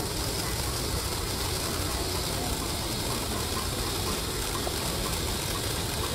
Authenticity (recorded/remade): recorded